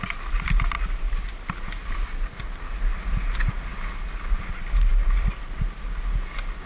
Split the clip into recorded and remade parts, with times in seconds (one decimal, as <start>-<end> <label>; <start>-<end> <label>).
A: 0.0-6.7 recorded